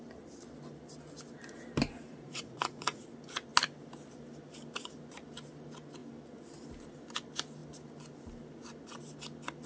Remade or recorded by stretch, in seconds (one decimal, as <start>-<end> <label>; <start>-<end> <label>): 0.0-2.1 recorded; 2.1-3.0 remade; 3.0-9.7 recorded